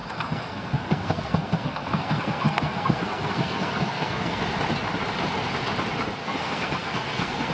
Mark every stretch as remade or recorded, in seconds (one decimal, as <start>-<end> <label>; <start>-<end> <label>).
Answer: 0.0-4.4 remade; 4.4-6.2 recorded; 6.2-7.5 remade